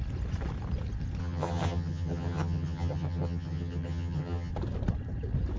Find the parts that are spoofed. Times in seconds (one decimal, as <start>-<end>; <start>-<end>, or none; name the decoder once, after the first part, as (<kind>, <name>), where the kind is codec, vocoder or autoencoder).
1.2-4.5 (vocoder, HiFi-GAN)